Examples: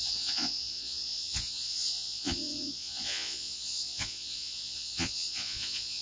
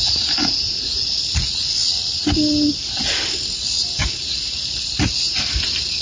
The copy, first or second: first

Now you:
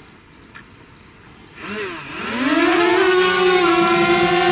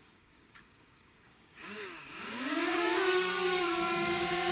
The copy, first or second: second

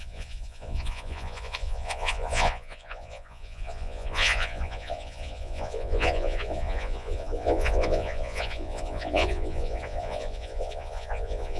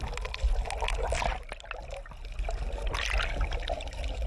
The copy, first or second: first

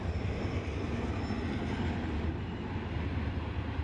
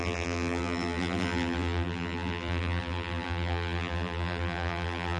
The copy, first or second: second